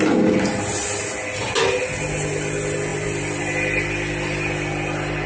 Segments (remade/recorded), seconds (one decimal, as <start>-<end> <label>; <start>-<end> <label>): 0.0-2.9 recorded; 2.9-3.4 remade; 3.4-5.3 recorded